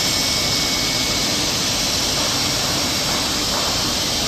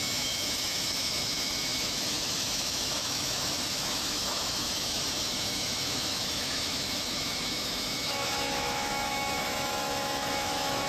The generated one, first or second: second